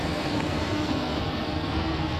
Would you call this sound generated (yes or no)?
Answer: yes